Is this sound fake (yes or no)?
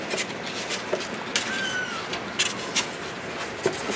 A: no